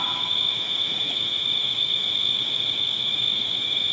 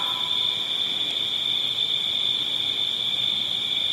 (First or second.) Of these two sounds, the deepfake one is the first